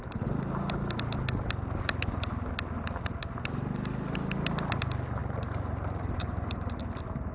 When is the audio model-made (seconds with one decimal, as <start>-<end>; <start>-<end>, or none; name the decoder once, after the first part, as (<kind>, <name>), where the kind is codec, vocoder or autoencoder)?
5.2-6.8 (vocoder, BigVGAN v2)